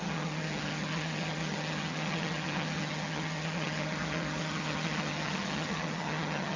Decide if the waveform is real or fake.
fake